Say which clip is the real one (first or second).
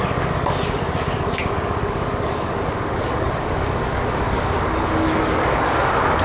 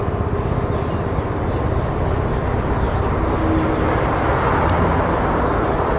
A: second